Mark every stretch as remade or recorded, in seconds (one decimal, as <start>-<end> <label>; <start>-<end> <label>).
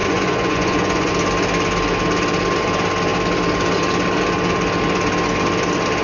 0.0-1.1 remade; 1.1-6.0 recorded